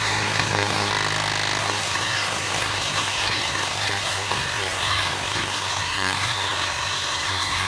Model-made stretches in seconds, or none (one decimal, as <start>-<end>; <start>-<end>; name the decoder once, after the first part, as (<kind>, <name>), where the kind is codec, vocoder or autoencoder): 0.0-0.9 (codec, SNAC); 1.6-7.7